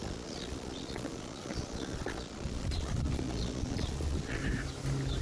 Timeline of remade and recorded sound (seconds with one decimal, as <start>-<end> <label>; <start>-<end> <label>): 0.0-4.4 remade; 4.4-5.2 recorded